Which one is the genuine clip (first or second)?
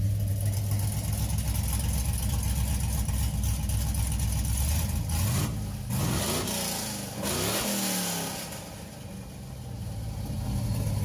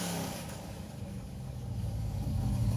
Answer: first